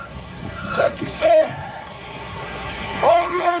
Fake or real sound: fake